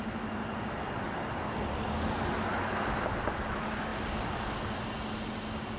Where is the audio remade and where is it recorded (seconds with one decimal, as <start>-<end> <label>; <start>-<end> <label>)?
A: 0.0-5.8 recorded